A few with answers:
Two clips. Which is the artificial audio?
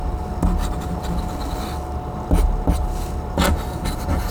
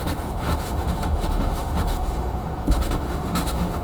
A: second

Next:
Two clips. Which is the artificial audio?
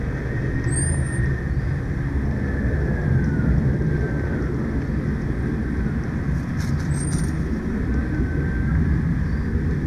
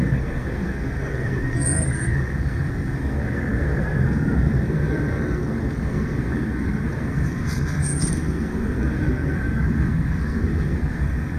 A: second